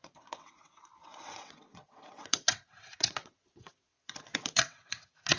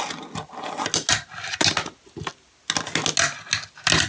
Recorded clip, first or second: second